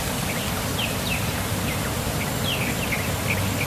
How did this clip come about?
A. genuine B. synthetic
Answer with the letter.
A